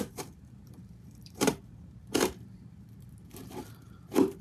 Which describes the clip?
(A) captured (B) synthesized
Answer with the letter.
B